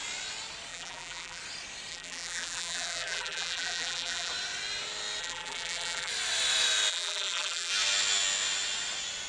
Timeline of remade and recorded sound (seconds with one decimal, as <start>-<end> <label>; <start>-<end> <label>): 0.0-0.7 recorded; 0.7-1.4 remade; 1.4-1.9 recorded; 1.9-4.3 remade; 4.3-5.2 recorded; 5.2-6.1 remade; 6.1-6.9 recorded; 6.9-7.7 remade; 7.7-9.3 recorded